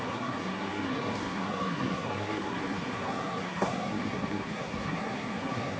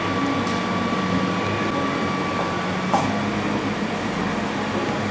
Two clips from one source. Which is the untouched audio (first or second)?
second